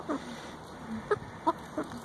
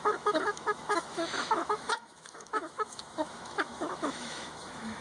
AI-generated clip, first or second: second